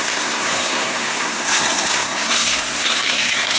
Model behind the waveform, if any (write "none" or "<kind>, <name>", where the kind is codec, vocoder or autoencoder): codec, SNAC